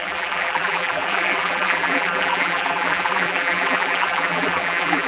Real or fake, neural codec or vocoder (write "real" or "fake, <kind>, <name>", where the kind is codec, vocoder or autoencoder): fake, vocoder, BigVGAN v2